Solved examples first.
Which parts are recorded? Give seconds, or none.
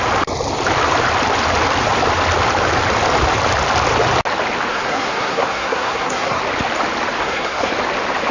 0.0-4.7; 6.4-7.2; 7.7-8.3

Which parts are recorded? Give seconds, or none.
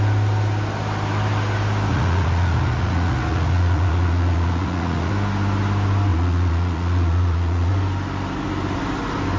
0.0-1.9; 5.1-6.1; 7.7-9.4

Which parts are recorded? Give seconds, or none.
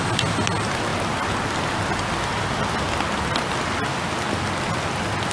0.0-5.3